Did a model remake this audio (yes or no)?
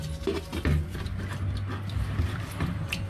no